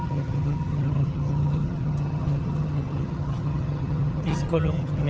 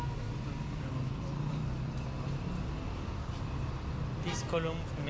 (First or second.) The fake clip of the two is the first